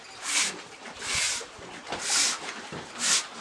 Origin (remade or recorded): recorded